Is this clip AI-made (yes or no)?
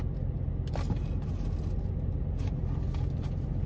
no